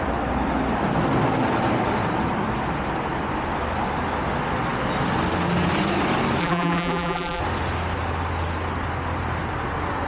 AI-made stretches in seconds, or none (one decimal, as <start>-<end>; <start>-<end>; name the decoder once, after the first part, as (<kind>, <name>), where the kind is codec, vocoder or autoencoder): 6.4-7.4 (vocoder, BigVGAN v2)